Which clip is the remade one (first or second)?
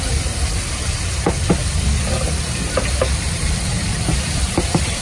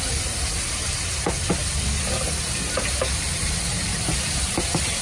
first